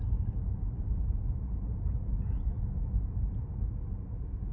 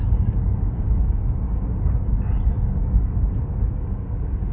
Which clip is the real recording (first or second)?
first